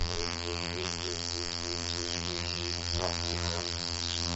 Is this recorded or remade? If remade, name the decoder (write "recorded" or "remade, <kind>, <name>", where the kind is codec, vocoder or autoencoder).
remade, vocoder, BigVGAN v2